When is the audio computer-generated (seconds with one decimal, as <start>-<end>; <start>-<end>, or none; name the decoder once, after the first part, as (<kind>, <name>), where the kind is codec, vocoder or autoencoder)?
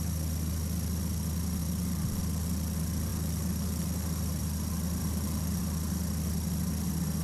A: 1.6-2.2 (vocoder, BigVGAN v2); 3.1-4.4; 5.0-5.6